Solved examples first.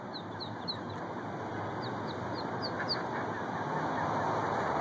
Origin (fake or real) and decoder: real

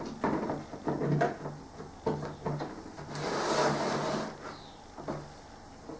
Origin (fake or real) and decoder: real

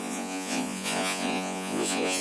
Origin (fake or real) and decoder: fake, vocoder, Vocos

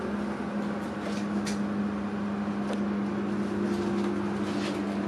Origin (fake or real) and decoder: real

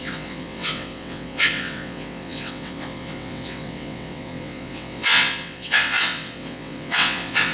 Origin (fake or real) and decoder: fake, vocoder, WaveNeXt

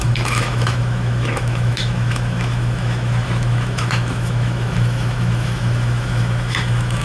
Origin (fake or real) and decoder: fake, autoencoder, DAC-VAE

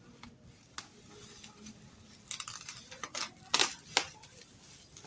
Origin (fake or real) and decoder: real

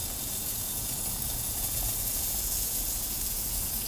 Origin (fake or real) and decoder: fake, vocoder, Vocos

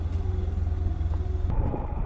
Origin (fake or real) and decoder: real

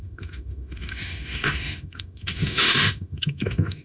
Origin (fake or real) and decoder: fake, autoencoder, DAC-VAE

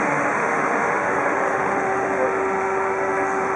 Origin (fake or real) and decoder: fake, autoencoder, DAC-VAE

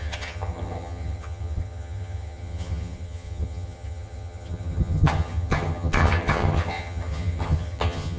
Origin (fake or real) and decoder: fake, vocoder, HiFi-GAN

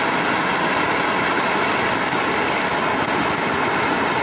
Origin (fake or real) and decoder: real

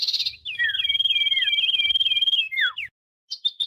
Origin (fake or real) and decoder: real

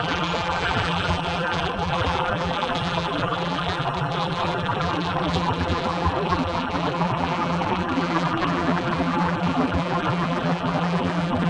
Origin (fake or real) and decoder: fake, vocoder, BigVGAN v2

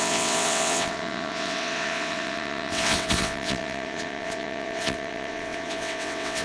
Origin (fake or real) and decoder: fake, vocoder, WaveNeXt